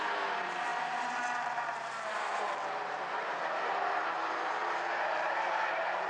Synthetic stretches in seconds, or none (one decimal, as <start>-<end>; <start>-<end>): 0.0-6.1